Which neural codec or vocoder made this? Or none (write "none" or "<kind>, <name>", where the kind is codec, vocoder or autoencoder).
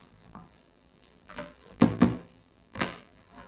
vocoder, BigVGAN v2